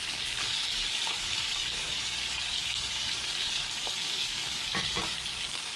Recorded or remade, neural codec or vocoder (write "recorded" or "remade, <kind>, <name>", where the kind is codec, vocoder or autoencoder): remade, codec, DAC